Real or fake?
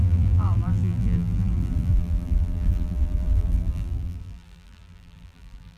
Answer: fake